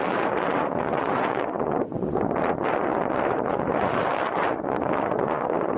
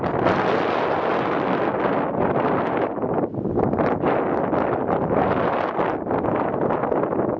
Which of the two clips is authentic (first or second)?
second